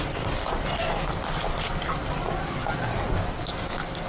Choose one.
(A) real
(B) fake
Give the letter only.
A